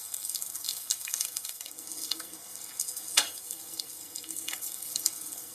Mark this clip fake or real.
fake